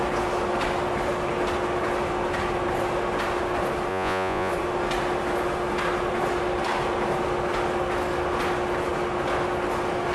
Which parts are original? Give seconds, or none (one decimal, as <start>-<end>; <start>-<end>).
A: 0.0-3.9; 4.5-10.1